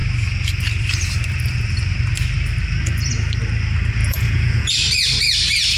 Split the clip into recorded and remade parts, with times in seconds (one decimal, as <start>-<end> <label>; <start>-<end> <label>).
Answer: 0.0-4.0 recorded; 4.0-4.7 remade; 4.7-5.8 recorded